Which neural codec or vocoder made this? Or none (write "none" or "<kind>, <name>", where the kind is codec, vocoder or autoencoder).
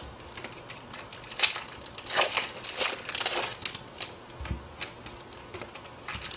none